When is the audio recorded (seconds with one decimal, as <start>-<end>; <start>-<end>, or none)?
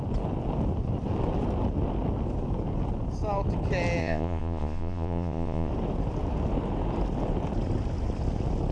0.0-4.0; 5.7-8.7